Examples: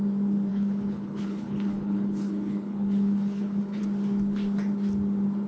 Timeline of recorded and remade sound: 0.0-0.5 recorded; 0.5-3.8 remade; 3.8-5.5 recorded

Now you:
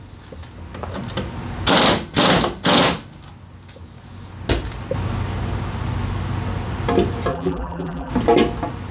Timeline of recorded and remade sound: 0.0-7.3 recorded; 7.3-8.1 remade; 8.1-8.9 recorded

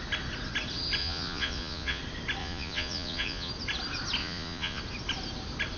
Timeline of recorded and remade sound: 0.0-1.0 recorded; 1.0-2.0 remade; 2.0-2.4 recorded; 2.4-3.5 remade; 3.5-4.2 recorded; 4.2-4.8 remade; 4.8-5.8 recorded

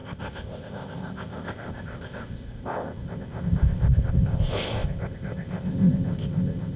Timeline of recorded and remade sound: 0.0-6.8 remade

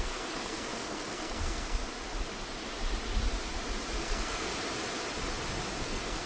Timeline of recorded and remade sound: 0.0-1.8 remade; 1.8-4.0 recorded; 4.0-4.5 remade; 4.5-5.8 recorded; 5.8-6.3 remade